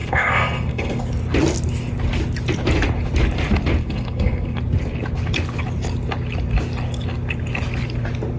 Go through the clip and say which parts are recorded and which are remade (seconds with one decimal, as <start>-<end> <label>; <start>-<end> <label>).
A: 0.0-1.0 remade; 1.0-3.8 recorded; 3.8-4.6 remade; 4.6-8.4 recorded